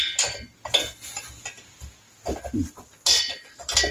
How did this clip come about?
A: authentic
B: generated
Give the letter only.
A